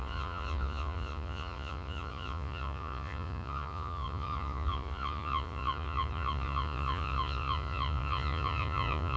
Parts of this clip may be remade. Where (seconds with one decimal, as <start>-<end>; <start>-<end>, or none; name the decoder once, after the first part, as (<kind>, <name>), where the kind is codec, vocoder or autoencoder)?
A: 0.0-9.2 (vocoder, Vocos)